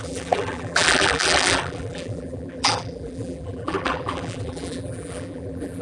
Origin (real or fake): fake